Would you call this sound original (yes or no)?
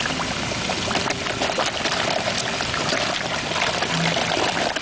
yes